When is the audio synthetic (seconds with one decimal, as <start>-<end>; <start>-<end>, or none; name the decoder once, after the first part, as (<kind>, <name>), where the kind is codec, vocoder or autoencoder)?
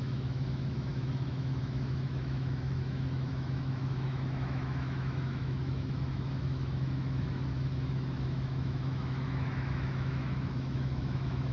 0.0-11.5 (autoencoder, DAC-VAE)